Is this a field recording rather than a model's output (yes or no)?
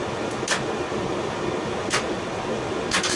yes